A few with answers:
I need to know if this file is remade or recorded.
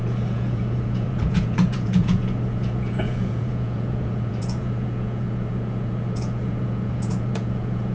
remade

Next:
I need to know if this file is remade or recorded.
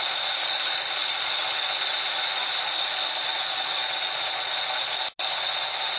recorded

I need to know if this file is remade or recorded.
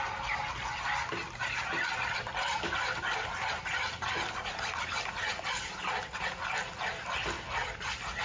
recorded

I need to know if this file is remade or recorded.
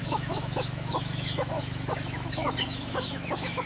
remade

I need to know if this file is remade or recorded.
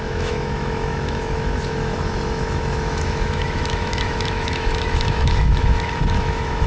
remade